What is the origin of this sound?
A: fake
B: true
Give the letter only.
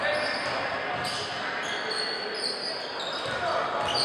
B